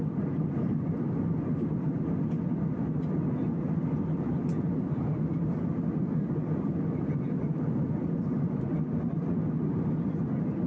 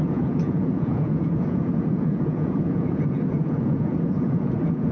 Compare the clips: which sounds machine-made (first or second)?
second